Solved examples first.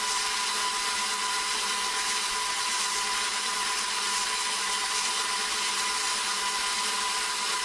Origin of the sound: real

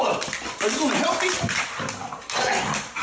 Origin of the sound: real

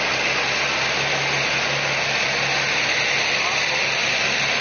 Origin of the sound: real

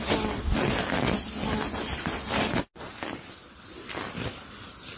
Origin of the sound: real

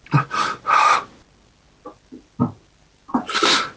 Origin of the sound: real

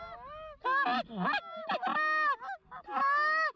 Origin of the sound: real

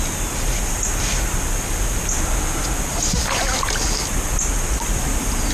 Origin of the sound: real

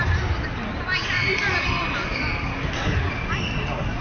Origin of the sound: real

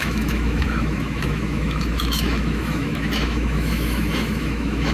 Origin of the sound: fake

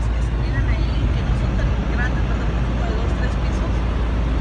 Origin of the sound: real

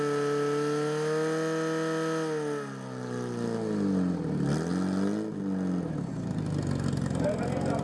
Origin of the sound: real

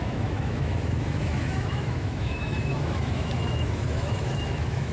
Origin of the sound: fake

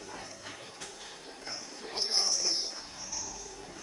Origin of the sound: fake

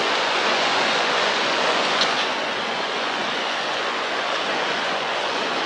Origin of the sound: fake